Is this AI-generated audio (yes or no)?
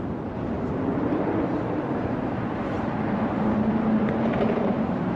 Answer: yes